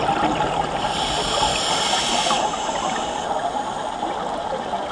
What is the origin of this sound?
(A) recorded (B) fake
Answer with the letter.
A